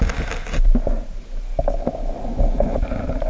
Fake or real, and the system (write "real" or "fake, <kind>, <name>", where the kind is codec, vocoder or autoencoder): real